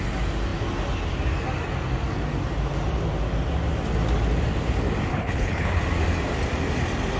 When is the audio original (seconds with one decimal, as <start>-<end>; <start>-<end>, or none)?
0.0-5.1; 5.8-7.2